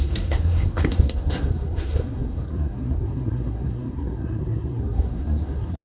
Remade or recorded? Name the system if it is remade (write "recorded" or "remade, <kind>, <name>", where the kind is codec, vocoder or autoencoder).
remade, codec, SNAC